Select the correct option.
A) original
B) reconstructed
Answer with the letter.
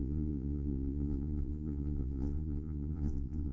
B